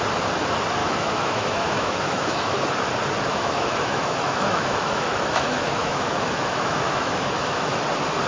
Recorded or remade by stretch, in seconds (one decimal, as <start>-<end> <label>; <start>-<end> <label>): 0.0-0.8 recorded; 0.8-2.6 remade; 2.6-3.3 recorded; 3.3-7.8 remade; 7.8-8.3 recorded